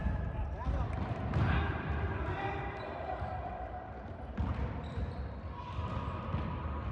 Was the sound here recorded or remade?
remade